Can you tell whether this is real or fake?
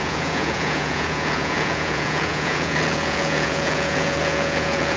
fake